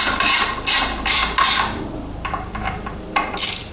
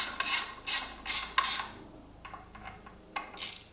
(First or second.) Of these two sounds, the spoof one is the first